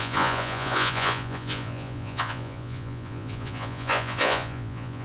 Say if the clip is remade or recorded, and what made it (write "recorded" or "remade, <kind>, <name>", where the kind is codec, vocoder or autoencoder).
remade, vocoder, Vocos